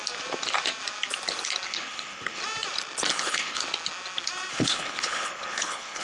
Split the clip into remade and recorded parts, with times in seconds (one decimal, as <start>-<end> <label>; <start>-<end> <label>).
0.0-1.7 recorded; 1.7-2.4 remade; 2.4-3.1 recorded; 3.1-3.6 remade; 3.6-4.5 recorded; 4.5-6.0 remade